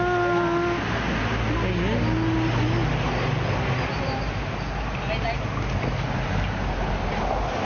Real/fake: real